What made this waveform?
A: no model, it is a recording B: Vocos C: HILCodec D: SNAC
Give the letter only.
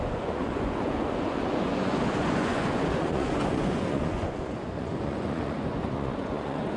B